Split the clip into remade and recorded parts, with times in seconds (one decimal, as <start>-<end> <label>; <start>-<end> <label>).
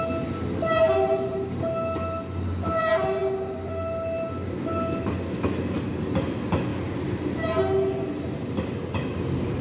0.0-9.6 recorded